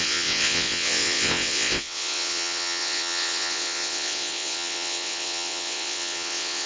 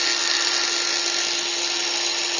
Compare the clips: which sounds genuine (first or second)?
second